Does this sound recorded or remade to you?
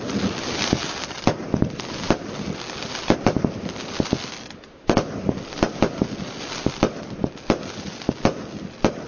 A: recorded